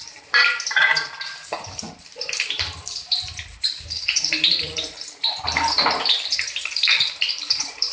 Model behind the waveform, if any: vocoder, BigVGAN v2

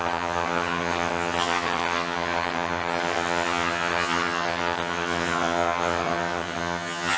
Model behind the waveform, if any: vocoder, HiFi-GAN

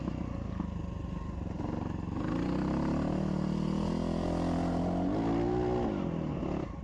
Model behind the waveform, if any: none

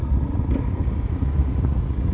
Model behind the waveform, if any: vocoder, Vocos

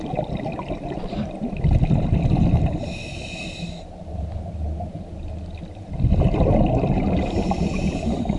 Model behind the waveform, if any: none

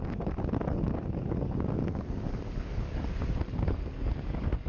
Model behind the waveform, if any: codec, DAC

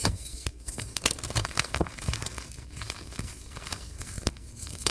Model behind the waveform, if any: codec, SNAC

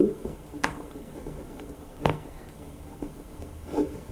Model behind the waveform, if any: codec, SNAC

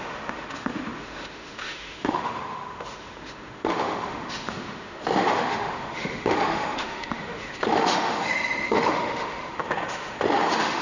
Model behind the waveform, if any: autoencoder, DAC-VAE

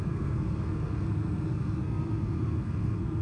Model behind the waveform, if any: codec, SNAC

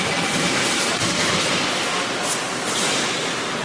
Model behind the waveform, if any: none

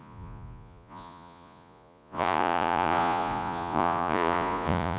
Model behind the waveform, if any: vocoder, Vocos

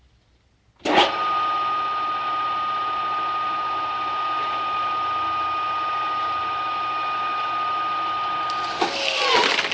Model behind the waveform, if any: none